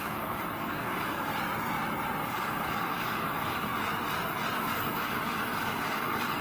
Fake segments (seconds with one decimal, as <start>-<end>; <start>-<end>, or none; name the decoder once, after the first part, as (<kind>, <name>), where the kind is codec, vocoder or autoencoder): 0.0-1.3 (codec, DAC); 2.2-3.7; 4.6-6.4